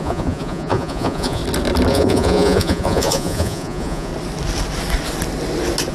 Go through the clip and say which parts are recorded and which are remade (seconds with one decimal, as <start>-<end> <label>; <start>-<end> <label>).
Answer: 0.0-1.4 remade; 1.4-1.9 recorded; 1.9-4.1 remade; 4.1-5.9 recorded